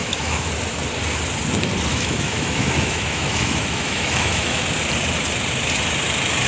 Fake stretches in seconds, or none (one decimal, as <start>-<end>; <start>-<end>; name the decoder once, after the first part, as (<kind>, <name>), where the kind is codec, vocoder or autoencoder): 0.0-0.5 (autoencoder, DAC-VAE); 1.9-4.6